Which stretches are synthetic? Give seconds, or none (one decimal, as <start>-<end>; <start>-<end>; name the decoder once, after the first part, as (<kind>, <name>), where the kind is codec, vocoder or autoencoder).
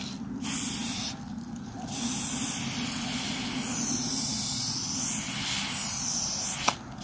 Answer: 0.8-2.6 (vocoder, BigVGAN v2)